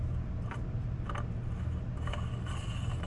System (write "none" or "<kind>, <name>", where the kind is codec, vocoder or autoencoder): none